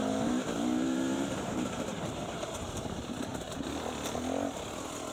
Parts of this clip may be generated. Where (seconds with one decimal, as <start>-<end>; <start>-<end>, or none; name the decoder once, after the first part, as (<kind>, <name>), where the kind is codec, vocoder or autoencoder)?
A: 0.0-3.1 (vocoder, BigVGAN v2)